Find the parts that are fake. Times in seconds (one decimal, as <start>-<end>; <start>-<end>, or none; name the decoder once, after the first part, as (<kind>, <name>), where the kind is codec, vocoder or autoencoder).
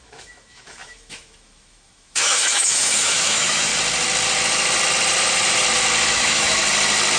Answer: 0.0-3.7 (autoencoder, DAC-VAE); 6.1-6.6